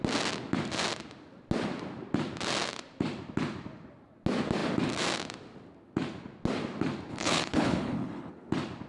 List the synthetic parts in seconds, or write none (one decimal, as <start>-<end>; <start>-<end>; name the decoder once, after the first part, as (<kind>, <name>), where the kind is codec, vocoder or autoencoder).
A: 7.1-8.3 (codec, HILCodec)